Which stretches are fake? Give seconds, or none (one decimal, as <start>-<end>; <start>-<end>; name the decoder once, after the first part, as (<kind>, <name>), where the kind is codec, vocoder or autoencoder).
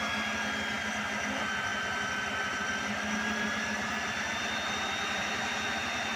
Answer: none